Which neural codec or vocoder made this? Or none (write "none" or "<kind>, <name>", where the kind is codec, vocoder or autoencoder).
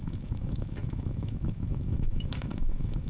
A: autoencoder, DAC-VAE